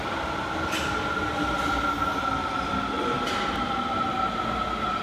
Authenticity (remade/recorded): recorded